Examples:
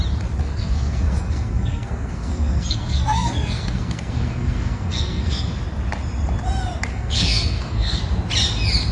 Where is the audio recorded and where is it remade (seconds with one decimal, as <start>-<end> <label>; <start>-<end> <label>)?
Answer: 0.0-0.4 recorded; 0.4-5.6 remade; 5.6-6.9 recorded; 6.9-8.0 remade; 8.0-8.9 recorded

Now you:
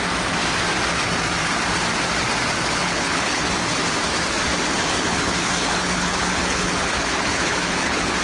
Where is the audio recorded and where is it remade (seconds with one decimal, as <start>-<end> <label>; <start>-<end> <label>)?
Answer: 0.0-2.8 recorded; 2.8-3.5 remade; 3.5-4.7 recorded; 4.7-8.2 remade

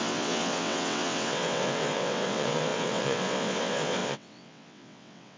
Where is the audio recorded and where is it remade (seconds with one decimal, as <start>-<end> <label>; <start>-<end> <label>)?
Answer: 0.0-5.4 remade

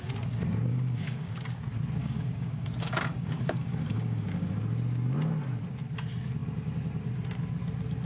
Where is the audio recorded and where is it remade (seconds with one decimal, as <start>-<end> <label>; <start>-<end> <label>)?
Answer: 0.0-0.7 recorded; 0.7-1.4 remade; 1.4-2.0 recorded; 2.0-4.5 remade; 4.5-8.1 recorded